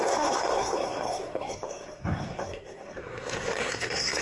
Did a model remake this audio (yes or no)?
yes